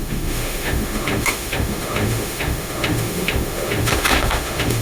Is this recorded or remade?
remade